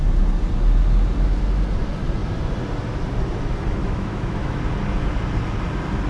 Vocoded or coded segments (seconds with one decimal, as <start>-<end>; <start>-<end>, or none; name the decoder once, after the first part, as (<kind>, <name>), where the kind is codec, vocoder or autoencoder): 3.8-4.6 (autoencoder, DAC-VAE)